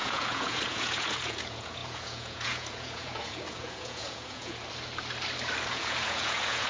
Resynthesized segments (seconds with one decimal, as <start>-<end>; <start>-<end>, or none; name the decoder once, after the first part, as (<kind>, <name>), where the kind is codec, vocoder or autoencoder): 0.0-4.6 (vocoder, Vocos); 5.7-6.7